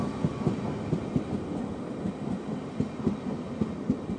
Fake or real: real